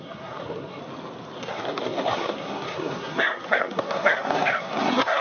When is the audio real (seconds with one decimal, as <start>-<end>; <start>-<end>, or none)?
0.8-1.4